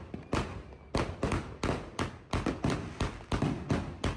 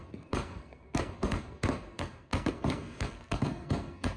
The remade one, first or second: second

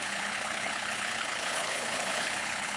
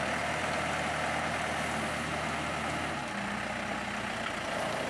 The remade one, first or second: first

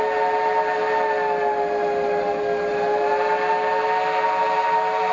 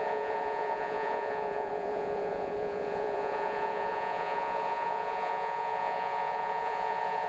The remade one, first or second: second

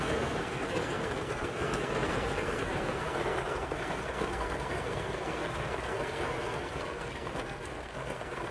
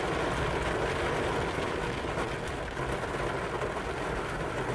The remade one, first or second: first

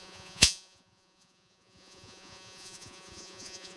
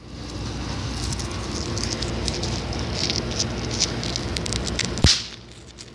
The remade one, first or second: first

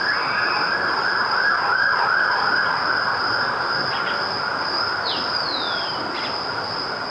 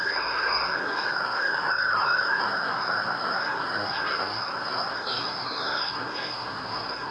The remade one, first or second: second